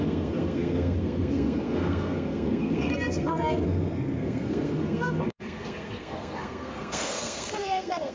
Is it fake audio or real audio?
fake